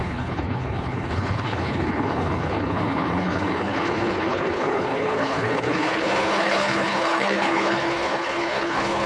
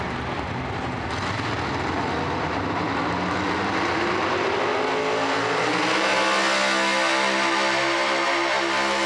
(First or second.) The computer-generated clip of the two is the first